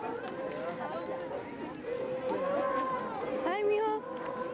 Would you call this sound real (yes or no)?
yes